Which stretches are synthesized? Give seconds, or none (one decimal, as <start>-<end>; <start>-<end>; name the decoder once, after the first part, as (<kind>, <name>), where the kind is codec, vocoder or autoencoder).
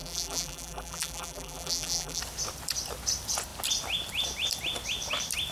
0.0-2.2 (vocoder, BigVGAN v2)